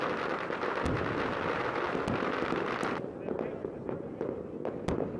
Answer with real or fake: real